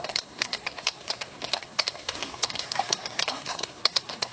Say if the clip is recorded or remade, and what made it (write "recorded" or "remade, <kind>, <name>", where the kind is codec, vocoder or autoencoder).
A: remade, codec, SNAC